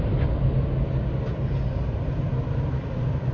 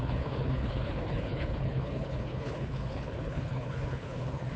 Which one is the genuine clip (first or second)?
first